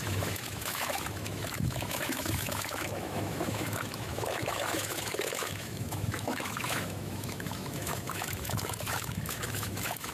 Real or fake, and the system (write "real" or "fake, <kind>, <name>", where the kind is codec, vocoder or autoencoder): fake, autoencoder, DAC-VAE